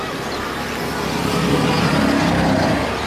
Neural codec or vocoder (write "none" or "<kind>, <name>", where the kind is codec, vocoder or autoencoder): none